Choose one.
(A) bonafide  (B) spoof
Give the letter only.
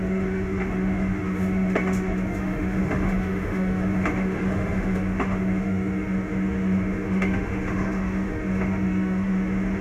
B